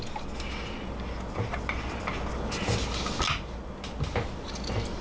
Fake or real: real